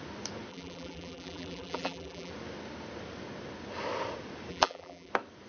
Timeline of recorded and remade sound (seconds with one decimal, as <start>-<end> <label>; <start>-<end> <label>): 0.0-0.5 recorded; 0.5-2.3 remade; 2.3-4.5 recorded; 4.5-5.1 remade; 5.1-5.5 recorded